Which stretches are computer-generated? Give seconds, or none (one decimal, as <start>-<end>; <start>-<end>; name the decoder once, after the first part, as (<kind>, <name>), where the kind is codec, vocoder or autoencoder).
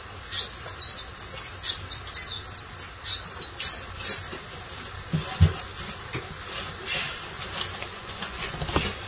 7.9-8.5 (vocoder, Vocos)